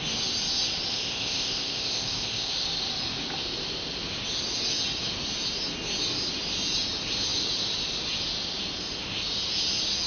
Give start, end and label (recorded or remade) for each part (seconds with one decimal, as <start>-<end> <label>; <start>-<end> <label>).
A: 0.0-0.9 recorded; 0.9-2.5 remade; 2.5-10.1 recorded